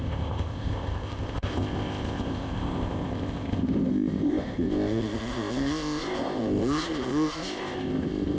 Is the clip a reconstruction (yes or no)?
yes